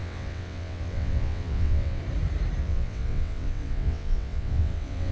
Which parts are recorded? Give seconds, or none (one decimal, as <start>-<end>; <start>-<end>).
2.0-2.6